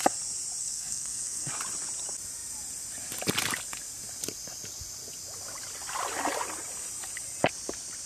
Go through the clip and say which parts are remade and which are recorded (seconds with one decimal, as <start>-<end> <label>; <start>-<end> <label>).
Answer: 0.0-0.6 recorded; 0.6-1.5 remade; 1.5-8.1 recorded